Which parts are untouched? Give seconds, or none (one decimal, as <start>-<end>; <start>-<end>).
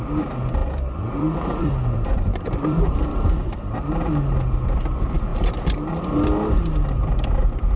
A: 0.0-0.6; 3.9-5.3; 6.0-7.8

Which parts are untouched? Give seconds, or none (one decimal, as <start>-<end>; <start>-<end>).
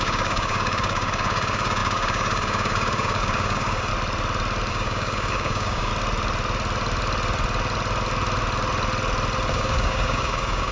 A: 3.9-4.7; 5.9-9.5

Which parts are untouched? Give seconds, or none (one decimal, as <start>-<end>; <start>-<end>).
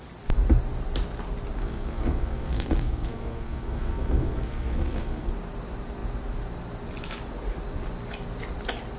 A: 0.0-1.6; 5.3-9.0